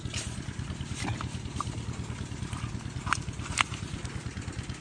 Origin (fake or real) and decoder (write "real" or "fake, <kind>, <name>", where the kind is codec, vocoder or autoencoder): real